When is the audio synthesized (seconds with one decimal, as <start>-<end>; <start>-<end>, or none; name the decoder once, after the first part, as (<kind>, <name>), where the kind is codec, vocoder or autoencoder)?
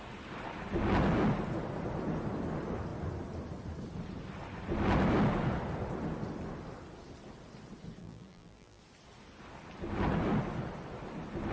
8.0-8.8 (vocoder, BigVGAN v2)